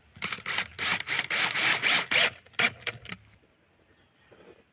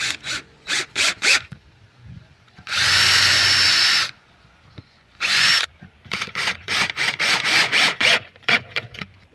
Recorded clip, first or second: first